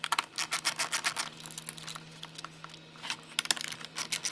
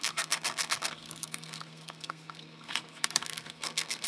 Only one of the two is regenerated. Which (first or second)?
second